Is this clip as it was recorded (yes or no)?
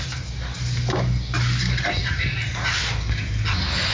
yes